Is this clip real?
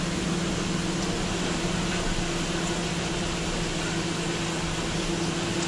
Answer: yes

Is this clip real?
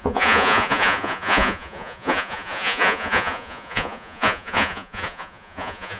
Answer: no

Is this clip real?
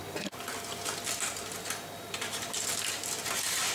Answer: yes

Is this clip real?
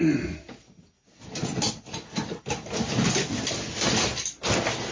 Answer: yes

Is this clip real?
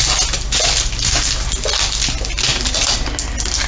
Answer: yes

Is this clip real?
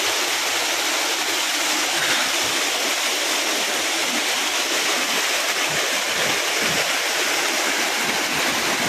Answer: yes